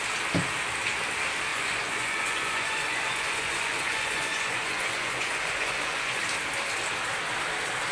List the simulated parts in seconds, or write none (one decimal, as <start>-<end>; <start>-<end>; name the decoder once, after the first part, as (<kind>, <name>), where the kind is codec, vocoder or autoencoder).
1.5-6.2 (vocoder, Vocos)